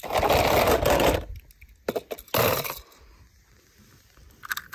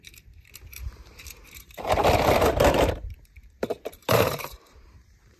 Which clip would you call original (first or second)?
first